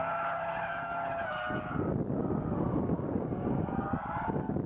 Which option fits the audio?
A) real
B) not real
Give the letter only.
A